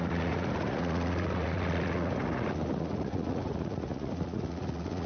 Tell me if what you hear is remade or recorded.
remade